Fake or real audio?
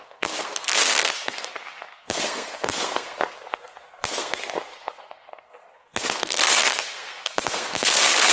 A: fake